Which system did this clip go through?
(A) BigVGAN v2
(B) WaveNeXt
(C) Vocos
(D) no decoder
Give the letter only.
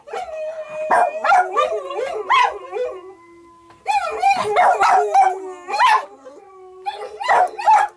D